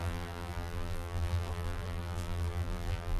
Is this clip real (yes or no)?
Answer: no